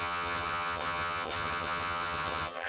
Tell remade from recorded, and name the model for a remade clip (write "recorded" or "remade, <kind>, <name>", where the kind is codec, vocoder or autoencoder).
remade, vocoder, HiFi-GAN